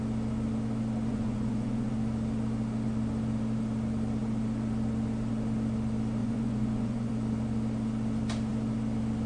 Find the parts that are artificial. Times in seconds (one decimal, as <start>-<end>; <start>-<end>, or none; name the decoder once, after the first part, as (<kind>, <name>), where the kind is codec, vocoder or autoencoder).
1.1-1.9 (vocoder, Vocos); 6.2-7.1